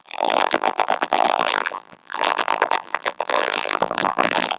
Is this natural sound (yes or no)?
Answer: no